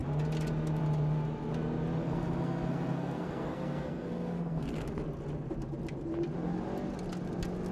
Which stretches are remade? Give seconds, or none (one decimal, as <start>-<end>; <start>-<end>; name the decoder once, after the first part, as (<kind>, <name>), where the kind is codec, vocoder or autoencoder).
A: 2.0-4.9 (codec, SNAC)